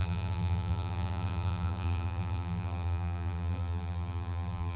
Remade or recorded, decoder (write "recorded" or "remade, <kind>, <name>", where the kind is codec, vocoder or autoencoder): remade, vocoder, BigVGAN v2